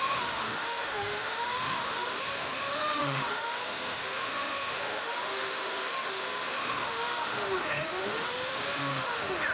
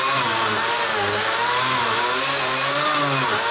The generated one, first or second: first